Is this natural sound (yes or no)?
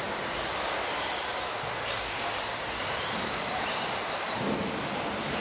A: yes